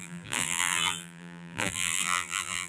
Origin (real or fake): fake